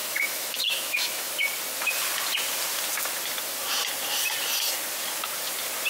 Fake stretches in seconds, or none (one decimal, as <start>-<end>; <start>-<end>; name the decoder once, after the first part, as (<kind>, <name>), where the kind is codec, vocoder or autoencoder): 0.0-1.3 (autoencoder, DAC-VAE)